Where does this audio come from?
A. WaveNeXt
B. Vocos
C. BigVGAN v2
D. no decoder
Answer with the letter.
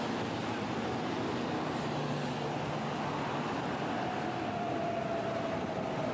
D